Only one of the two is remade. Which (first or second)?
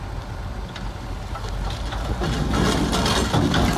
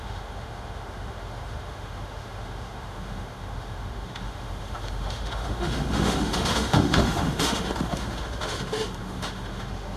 second